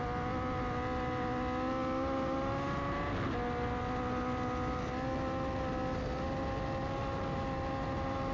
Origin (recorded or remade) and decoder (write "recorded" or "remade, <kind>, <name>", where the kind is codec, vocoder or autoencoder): recorded